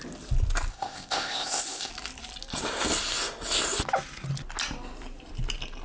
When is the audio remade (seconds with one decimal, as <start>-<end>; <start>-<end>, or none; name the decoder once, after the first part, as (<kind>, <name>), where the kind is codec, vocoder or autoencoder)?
0.7-1.9 (codec, ZipCodec)

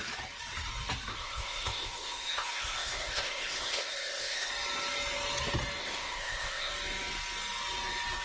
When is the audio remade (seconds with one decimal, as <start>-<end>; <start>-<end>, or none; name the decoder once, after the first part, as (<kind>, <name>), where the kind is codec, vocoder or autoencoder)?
1.1-4.5 (codec, ZipCodec); 5.8-6.7

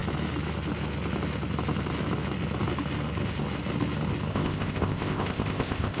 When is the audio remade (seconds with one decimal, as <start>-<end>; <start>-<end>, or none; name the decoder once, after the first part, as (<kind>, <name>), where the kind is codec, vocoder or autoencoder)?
4.3-6.0 (codec, ZipCodec)

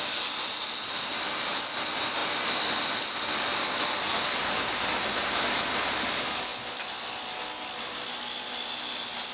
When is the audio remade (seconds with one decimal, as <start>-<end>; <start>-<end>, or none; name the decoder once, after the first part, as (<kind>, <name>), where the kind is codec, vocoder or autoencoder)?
none